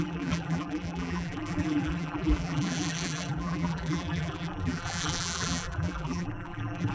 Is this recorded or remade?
remade